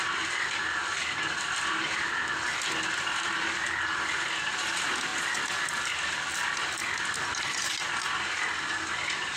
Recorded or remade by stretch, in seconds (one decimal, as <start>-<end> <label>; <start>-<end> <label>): 0.0-9.4 recorded